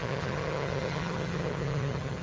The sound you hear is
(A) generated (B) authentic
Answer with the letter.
A